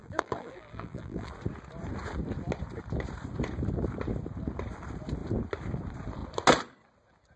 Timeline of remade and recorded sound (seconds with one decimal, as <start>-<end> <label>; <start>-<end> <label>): 0.0-1.3 remade; 1.3-7.4 recorded